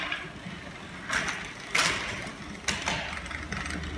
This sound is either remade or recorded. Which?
recorded